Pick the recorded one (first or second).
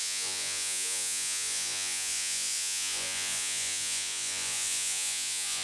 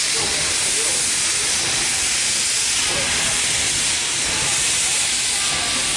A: second